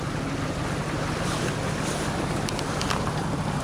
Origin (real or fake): fake